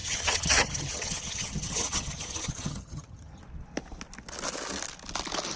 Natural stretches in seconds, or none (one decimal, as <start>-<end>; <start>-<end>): 3.4-5.6